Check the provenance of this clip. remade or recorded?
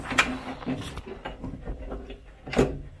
recorded